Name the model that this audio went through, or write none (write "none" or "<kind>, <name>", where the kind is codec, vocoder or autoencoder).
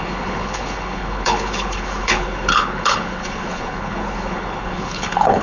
codec, HILCodec